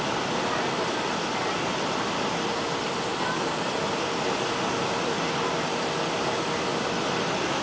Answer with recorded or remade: recorded